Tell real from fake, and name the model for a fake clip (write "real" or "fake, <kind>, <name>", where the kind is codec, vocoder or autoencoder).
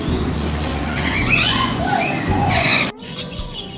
fake, vocoder, Vocos